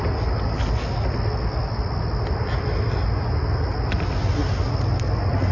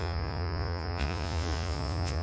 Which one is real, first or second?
first